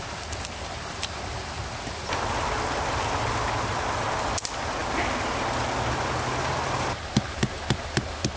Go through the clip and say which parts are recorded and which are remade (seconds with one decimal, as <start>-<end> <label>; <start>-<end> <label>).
0.0-8.4 recorded